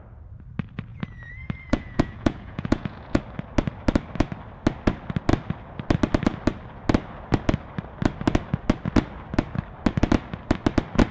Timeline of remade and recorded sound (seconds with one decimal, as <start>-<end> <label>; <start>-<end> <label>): 0.0-0.9 recorded; 0.9-3.2 remade; 3.2-11.1 recorded